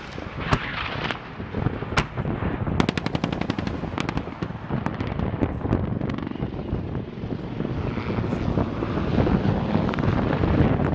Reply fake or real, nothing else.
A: real